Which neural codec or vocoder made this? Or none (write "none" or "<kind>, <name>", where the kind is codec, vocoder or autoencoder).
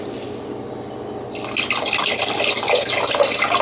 none